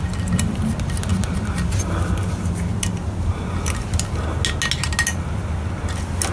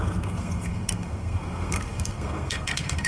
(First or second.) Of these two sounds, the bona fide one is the first